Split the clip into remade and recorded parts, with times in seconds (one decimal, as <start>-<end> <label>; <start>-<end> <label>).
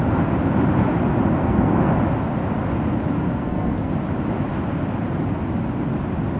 0.0-1.4 recorded; 1.4-1.9 remade; 1.9-3.3 recorded; 3.3-3.9 remade; 3.9-6.4 recorded